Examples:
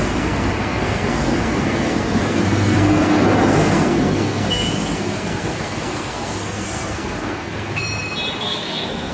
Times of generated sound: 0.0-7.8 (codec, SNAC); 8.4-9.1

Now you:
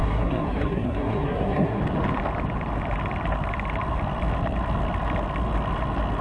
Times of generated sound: 0.0-1.8 (codec, SNAC)

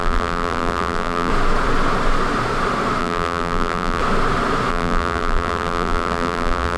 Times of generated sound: 0.0-1.3 (vocoder, BigVGAN v2); 3.0-4.0; 4.7-6.8

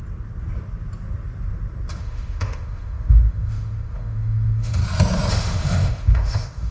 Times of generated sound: 2.0-4.8 (autoencoder, DAC-VAE); 5.3-6.7

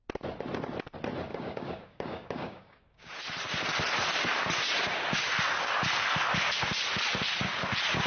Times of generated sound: 1.3-3.1 (codec, DAC)

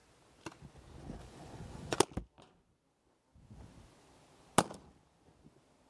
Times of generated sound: 1.2-2.0 (vocoder, Vocos)

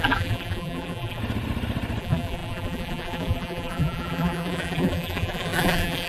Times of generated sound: 0.0-1.2 (vocoder, BigVGAN v2); 2.0-6.1

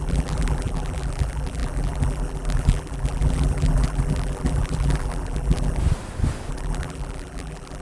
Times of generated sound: 0.0-5.8 (vocoder, BigVGAN v2); 6.5-7.8